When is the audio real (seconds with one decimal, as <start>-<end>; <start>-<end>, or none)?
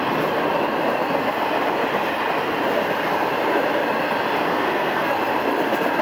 0.0-4.5; 5.1-6.0